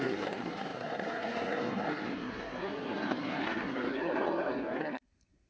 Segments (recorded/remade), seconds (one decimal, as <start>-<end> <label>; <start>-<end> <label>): 0.0-5.5 remade

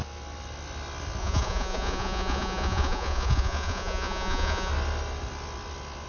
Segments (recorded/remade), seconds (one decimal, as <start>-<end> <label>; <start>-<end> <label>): 0.0-1.2 recorded; 1.2-4.7 remade; 4.7-6.1 recorded

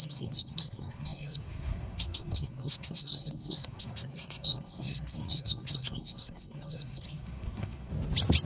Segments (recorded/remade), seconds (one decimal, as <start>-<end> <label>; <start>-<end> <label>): 0.0-7.9 remade; 7.9-8.5 recorded

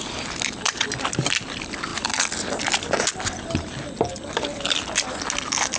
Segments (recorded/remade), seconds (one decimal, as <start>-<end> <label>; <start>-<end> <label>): 0.0-5.8 recorded

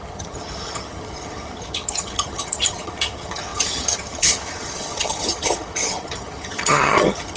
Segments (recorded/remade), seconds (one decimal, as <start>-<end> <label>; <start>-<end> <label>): 0.0-7.4 remade

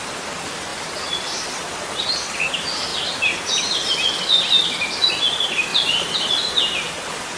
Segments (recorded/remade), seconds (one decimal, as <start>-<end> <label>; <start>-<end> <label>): 0.0-0.7 recorded; 0.7-1.7 remade; 1.7-5.7 recorded; 5.7-6.3 remade; 6.3-7.4 recorded

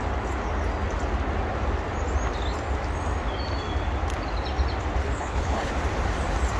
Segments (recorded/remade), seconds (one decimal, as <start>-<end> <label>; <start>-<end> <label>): 0.0-5.0 recorded; 5.0-5.7 remade; 5.7-6.6 recorded

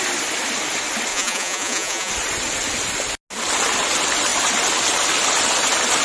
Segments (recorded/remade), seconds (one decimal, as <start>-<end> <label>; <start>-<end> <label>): 0.0-1.1 recorded; 1.1-2.1 remade; 2.1-6.0 recorded